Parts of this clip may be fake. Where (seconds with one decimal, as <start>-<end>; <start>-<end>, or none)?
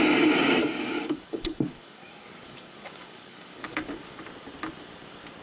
0.6-3.8